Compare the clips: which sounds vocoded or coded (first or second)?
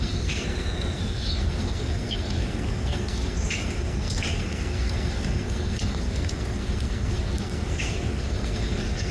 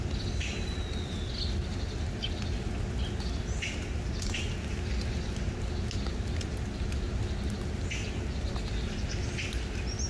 first